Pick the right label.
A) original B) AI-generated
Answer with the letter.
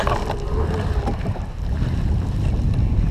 A